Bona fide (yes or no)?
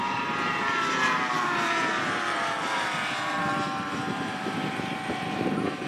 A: no